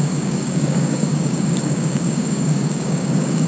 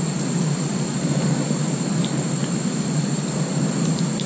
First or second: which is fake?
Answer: first